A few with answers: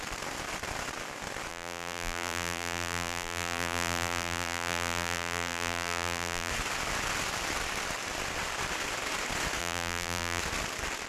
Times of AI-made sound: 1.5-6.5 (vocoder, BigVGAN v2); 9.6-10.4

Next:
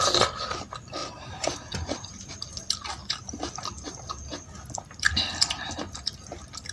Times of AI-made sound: 1.0-2.3 (vocoder, BigVGAN v2); 3.0-3.5

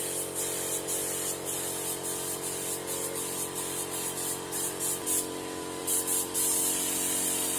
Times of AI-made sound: 0.0-7.6 (vocoder, BigVGAN v2)

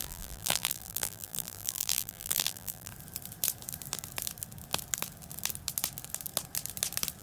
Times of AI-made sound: 0.0-2.9 (vocoder, BigVGAN v2)

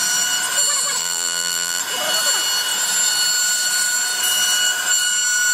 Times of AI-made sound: 1.0-1.8 (vocoder, BigVGAN v2)

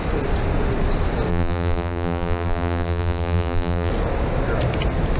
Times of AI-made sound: 1.3-3.9 (vocoder, BigVGAN v2)